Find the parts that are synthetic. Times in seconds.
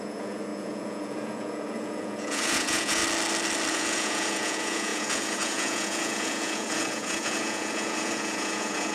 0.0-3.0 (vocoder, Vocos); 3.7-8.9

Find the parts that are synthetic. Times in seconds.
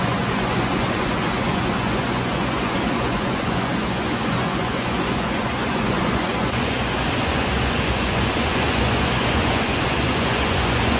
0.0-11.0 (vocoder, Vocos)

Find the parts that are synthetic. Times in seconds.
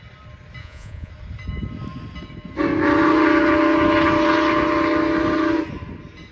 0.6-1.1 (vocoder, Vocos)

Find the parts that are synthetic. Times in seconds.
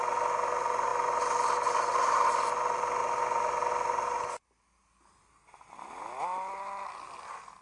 none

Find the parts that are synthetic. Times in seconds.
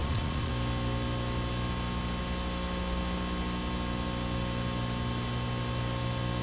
0.0-0.5 (vocoder, Vocos)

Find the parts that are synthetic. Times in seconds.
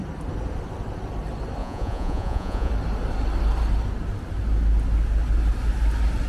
1.6-2.7 (vocoder, Vocos)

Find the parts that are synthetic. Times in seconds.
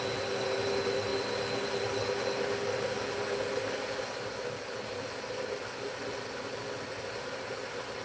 none